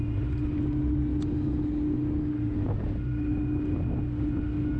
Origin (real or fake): real